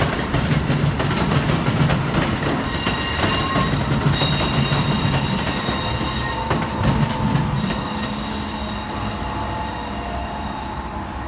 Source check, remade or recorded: recorded